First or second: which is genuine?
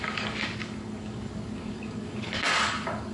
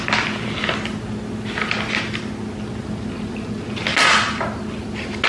second